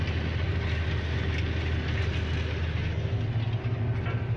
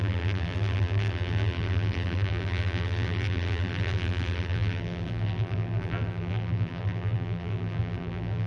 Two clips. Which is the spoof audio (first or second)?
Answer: second